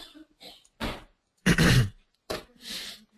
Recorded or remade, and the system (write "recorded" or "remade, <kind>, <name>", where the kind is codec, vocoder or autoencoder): remade, vocoder, Vocos